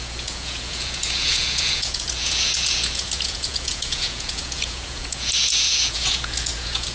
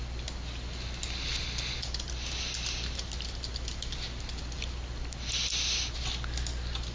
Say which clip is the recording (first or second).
second